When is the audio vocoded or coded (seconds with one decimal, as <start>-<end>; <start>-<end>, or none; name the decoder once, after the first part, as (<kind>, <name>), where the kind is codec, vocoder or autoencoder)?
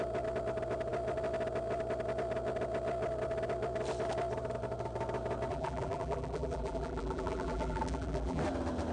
5.5-8.4 (vocoder, BigVGAN v2)